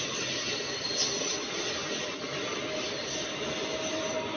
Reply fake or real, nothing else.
real